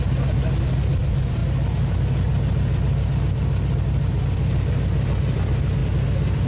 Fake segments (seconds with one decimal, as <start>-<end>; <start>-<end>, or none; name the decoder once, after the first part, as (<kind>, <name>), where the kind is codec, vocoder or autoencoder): none